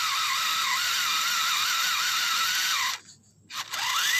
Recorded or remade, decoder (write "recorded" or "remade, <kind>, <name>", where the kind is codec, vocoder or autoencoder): recorded